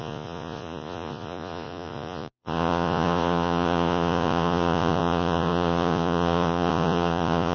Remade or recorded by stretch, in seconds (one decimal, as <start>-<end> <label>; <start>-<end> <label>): 0.0-7.5 remade